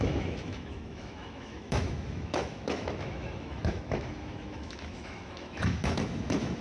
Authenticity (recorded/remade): remade